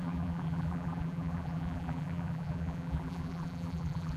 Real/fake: fake